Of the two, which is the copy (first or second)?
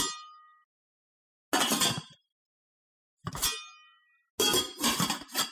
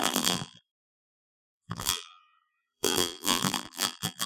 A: second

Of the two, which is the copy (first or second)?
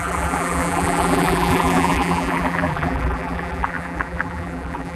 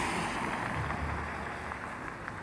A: first